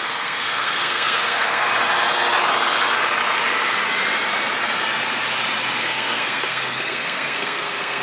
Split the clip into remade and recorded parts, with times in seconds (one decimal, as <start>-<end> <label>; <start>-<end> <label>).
0.0-1.7 remade; 1.7-5.8 recorded; 5.8-8.0 remade